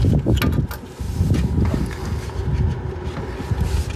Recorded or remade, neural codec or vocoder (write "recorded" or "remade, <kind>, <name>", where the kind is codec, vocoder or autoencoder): recorded